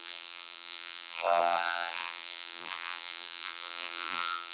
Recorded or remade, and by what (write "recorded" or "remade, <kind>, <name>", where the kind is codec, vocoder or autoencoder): remade, vocoder, BigVGAN v2